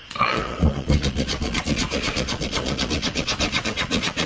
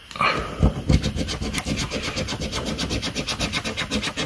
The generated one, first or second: first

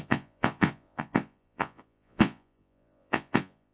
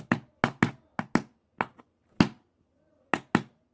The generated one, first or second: first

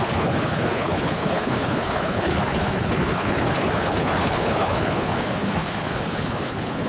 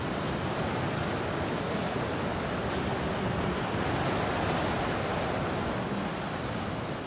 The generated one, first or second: first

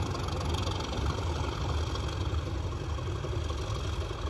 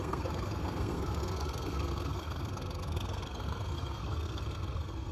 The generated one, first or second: second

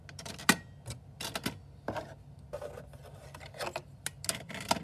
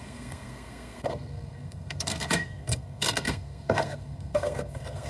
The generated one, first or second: second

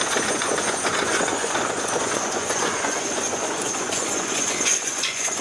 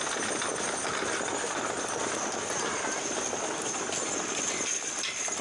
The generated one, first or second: first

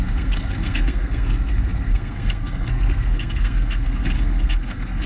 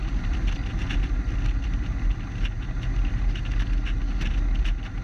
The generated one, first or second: first